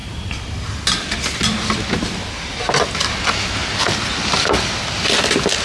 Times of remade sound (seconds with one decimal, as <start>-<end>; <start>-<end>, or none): none